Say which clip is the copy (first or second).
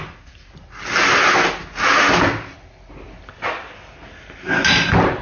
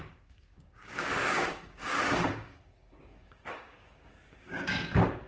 second